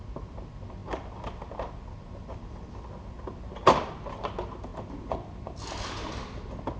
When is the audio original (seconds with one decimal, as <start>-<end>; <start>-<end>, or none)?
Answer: 0.0-6.8